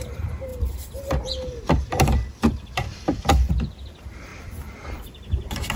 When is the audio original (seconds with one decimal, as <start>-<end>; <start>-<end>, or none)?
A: 0.0-0.5; 3.5-4.3